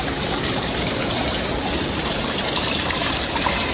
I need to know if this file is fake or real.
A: fake